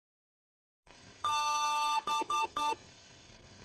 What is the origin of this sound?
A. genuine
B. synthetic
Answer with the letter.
B